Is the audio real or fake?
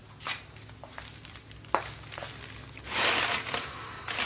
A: real